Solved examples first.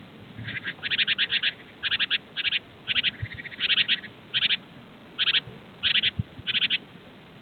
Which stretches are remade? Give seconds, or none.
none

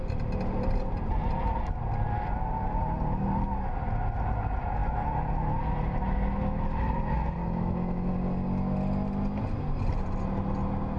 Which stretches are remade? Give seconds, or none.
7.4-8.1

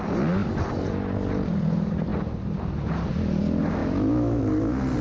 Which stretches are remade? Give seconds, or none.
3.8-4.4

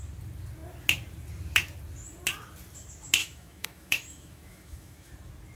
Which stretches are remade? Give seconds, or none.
3.2-5.1